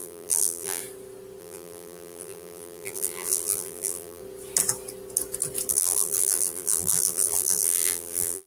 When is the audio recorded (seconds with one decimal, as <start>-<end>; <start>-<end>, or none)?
0.8-1.4; 4.2-5.7